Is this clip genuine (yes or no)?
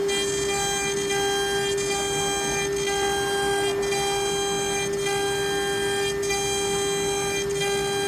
yes